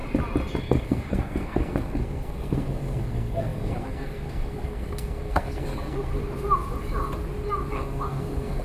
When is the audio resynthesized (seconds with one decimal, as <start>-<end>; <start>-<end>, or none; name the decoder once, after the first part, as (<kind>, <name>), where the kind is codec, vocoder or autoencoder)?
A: 0.6-6.1 (codec, SNAC); 7.7-8.6